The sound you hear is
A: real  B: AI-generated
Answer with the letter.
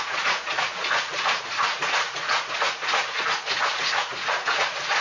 B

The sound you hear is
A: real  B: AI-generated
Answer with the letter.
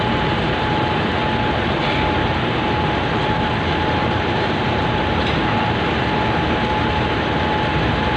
B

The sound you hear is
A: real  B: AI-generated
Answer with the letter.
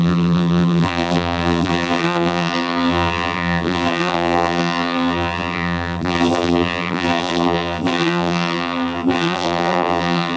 B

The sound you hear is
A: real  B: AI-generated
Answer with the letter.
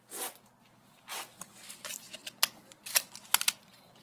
A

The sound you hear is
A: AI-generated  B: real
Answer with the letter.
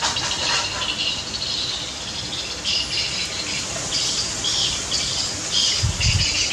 B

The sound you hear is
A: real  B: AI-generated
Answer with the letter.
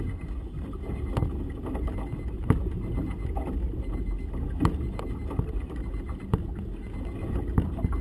A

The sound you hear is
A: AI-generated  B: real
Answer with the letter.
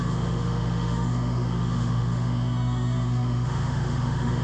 A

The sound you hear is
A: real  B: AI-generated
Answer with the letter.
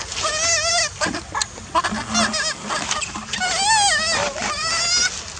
A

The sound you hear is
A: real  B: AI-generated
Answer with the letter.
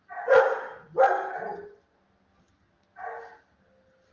A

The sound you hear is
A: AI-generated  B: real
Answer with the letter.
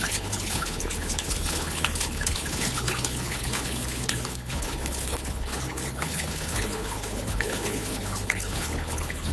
A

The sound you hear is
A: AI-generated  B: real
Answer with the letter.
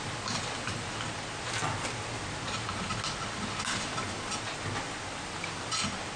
B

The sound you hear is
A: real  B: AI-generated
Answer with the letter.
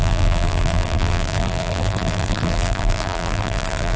B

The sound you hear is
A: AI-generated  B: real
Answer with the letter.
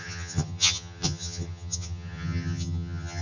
A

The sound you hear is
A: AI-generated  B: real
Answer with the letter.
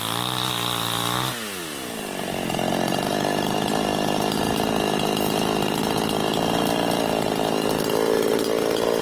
B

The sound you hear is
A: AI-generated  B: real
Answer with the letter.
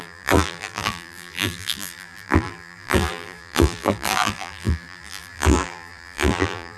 A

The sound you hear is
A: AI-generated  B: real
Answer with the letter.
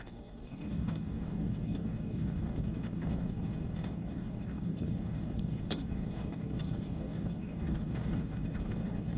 A